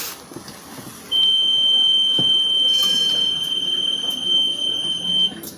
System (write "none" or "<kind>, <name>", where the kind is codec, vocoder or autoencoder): none